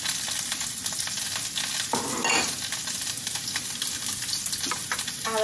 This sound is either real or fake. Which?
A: real